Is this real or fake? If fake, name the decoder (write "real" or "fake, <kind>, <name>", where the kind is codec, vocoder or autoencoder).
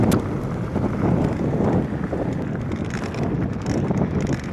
real